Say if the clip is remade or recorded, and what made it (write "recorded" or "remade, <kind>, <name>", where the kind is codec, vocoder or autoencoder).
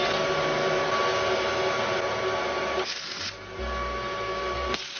recorded